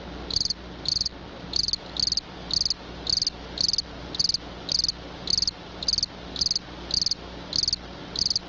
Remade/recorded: recorded